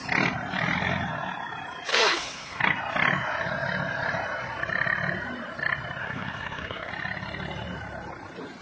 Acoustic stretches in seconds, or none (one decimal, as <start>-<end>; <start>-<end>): 0.0-1.9; 2.6-6.0; 6.9-8.6